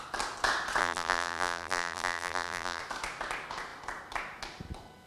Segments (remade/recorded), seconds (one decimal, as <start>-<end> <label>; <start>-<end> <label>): 0.0-0.8 recorded; 0.8-2.8 remade; 2.8-5.1 recorded